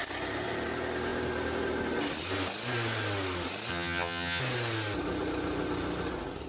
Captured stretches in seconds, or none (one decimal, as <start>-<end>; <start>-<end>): 0.0-3.7; 4.4-6.5